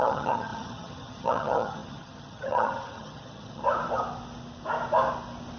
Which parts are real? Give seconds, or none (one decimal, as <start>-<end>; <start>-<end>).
3.6-5.6